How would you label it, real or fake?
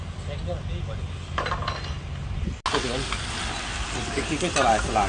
real